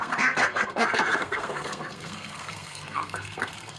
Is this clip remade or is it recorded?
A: remade